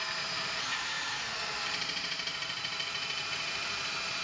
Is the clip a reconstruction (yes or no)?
yes